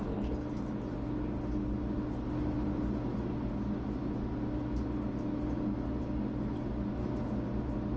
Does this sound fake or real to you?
real